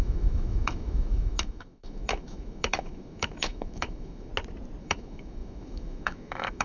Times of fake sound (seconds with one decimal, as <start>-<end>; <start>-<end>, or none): 0.0-4.3; 4.8-6.6